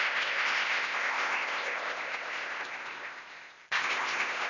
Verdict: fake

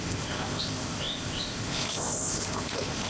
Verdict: fake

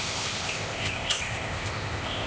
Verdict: fake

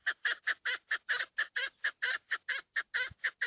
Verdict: real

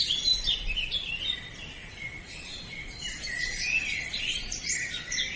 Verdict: real